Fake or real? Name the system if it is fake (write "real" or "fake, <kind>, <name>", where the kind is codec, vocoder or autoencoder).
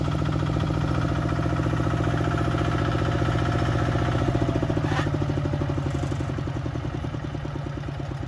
real